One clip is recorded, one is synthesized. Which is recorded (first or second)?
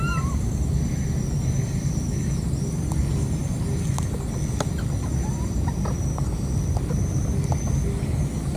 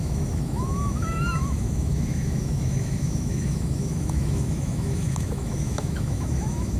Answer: first